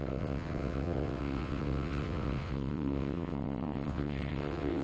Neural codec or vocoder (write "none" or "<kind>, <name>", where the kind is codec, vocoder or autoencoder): vocoder, WaveNeXt